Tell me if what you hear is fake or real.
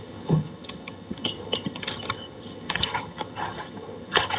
fake